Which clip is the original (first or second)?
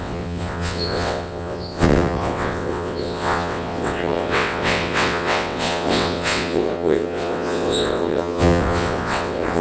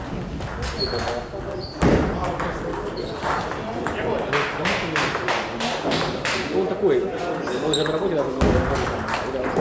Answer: second